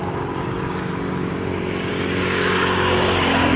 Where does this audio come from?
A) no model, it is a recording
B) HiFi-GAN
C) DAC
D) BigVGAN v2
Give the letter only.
C